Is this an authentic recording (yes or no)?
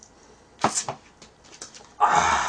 yes